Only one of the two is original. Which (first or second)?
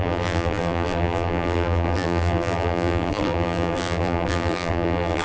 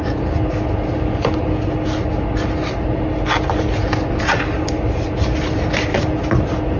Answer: second